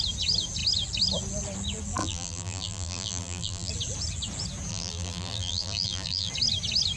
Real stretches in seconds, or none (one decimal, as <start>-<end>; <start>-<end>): 0.0-2.0; 3.7-4.7; 6.3-7.0